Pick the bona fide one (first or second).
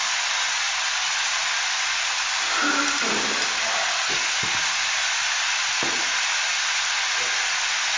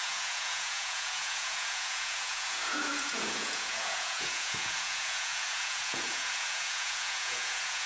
first